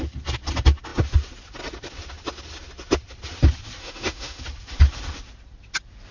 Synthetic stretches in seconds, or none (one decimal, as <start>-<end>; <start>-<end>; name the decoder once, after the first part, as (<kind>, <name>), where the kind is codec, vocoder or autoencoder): 3.8-4.4 (autoencoder, DAC-VAE)